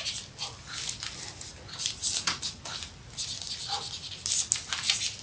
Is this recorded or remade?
recorded